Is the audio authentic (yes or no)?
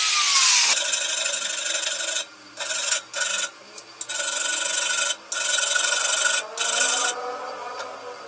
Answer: yes